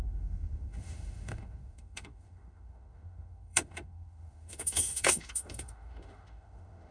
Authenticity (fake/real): fake